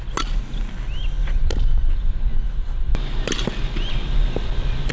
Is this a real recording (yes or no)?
yes